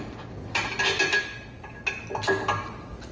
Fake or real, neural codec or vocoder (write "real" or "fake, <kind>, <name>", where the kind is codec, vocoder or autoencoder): real